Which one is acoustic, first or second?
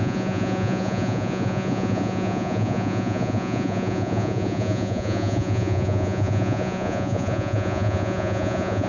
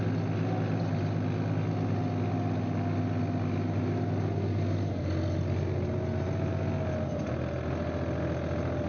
second